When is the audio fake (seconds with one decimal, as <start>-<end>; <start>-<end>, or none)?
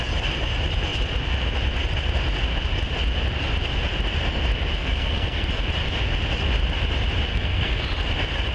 4.8-5.5; 7.3-7.8